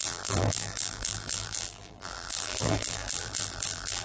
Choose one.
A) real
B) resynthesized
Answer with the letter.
B